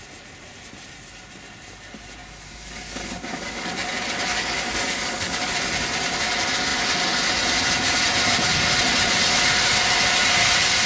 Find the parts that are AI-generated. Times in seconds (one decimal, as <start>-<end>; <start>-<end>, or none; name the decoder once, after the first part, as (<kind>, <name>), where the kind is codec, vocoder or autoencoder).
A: 2.2-3.7 (codec, DAC); 4.3-5.5